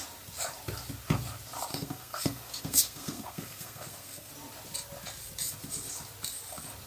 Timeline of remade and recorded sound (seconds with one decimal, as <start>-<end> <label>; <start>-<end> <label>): 0.0-1.7 recorded; 1.7-4.3 remade; 4.3-6.9 recorded